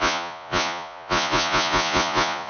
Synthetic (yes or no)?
yes